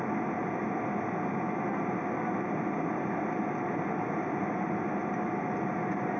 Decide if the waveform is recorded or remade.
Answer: recorded